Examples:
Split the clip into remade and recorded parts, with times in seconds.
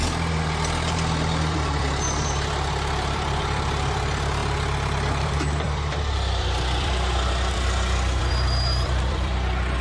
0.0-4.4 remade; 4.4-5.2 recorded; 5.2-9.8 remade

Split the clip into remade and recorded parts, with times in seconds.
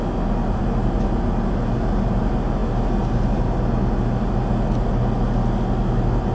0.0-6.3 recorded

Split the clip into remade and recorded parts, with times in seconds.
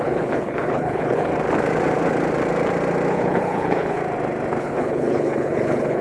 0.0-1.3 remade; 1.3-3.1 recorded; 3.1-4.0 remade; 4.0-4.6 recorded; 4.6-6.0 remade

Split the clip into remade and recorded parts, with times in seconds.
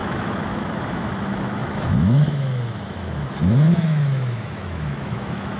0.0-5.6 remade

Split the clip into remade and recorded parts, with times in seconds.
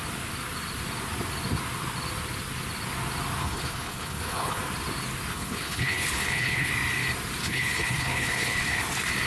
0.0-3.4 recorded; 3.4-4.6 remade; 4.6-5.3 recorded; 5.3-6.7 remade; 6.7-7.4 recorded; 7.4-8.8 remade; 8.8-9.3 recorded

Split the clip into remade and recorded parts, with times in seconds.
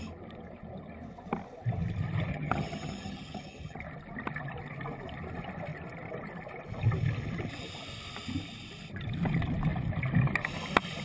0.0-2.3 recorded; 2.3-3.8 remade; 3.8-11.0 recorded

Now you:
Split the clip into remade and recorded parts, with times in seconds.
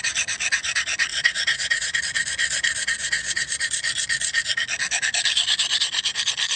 0.0-1.1 recorded; 1.1-2.0 remade; 2.0-3.0 recorded; 3.0-3.5 remade; 3.5-6.6 recorded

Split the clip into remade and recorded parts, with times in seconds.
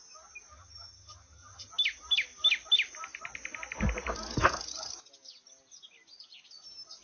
0.0-0.5 recorded; 0.5-1.7 remade; 1.7-7.0 recorded